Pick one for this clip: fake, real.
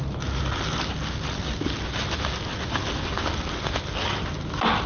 real